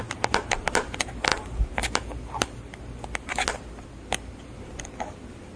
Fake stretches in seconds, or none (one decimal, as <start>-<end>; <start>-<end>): none